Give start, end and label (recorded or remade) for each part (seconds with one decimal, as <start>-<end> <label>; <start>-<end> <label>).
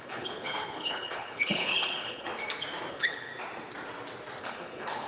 0.0-2.3 remade; 2.3-2.9 recorded; 2.9-3.3 remade; 3.3-4.4 recorded; 4.4-5.1 remade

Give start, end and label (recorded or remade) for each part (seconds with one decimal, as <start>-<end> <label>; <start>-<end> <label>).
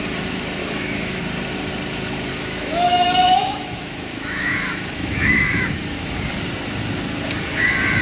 0.0-0.6 recorded; 0.6-1.2 remade; 1.2-2.3 recorded; 2.3-6.1 remade; 6.1-8.0 recorded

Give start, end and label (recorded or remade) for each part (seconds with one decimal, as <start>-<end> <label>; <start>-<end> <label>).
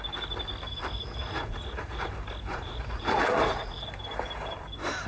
0.0-1.0 recorded; 1.0-2.1 remade; 2.1-2.5 recorded; 2.5-3.9 remade; 3.9-5.1 recorded